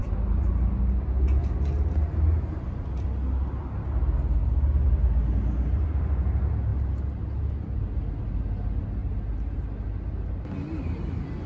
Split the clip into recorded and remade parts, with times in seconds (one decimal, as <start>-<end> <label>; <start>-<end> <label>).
0.0-0.5 remade; 0.5-9.0 recorded; 9.0-9.7 remade; 9.7-11.5 recorded